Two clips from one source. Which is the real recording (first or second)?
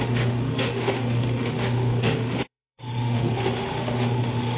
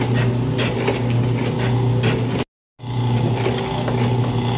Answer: second